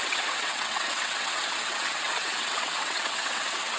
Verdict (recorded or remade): remade